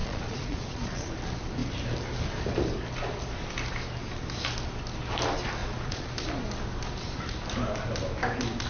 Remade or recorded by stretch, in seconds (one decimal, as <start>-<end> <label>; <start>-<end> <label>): 0.0-1.1 remade; 1.1-5.6 recorded; 5.6-6.1 remade; 6.1-8.7 recorded